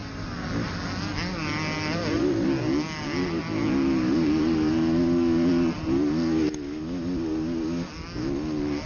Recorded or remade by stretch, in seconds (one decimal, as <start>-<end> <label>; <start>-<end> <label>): 0.0-8.9 recorded